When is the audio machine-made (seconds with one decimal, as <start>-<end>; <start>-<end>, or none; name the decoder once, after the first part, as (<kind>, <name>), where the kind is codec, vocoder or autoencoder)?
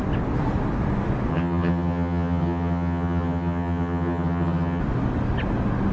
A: 1.3-4.8 (vocoder, HiFi-GAN)